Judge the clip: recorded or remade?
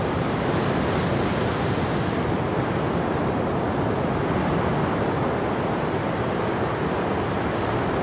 recorded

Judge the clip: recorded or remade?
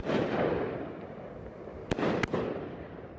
recorded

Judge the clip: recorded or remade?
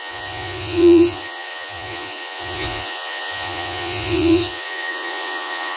remade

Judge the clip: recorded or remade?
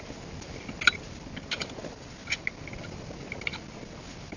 recorded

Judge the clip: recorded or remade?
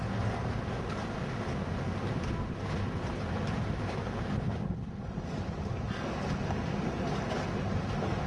recorded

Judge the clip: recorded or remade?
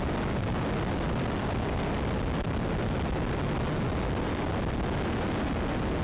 recorded